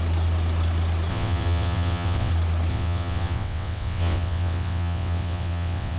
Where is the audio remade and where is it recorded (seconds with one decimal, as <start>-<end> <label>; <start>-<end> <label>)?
0.0-1.1 recorded; 1.1-2.3 remade; 2.3-2.7 recorded; 2.7-6.0 remade